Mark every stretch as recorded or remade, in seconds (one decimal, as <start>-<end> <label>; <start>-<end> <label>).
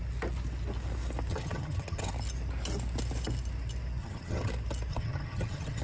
0.0-1.3 recorded; 1.3-2.1 remade; 2.1-4.0 recorded; 4.0-4.5 remade; 4.5-4.9 recorded; 4.9-5.8 remade